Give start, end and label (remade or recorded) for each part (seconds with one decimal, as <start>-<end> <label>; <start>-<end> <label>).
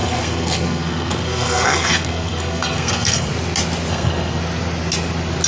0.0-3.3 remade; 3.3-3.9 recorded; 3.9-4.4 remade; 4.4-5.5 recorded